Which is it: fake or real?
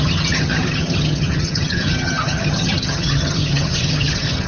fake